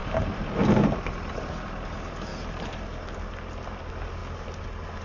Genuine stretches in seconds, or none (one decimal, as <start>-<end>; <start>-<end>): 0.0-5.0